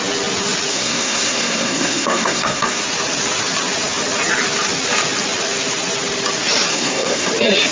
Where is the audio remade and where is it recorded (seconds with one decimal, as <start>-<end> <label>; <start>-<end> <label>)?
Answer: 0.0-0.7 recorded; 0.7-2.8 remade; 2.8-6.7 recorded; 6.7-7.3 remade; 7.3-7.7 recorded